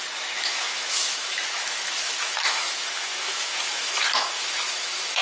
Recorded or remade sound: remade